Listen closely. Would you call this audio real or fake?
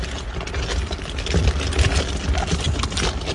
real